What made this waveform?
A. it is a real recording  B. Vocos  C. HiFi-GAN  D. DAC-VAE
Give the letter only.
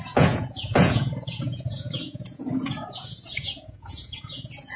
B